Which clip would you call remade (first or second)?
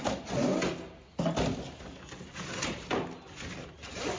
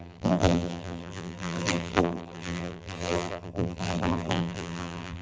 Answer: second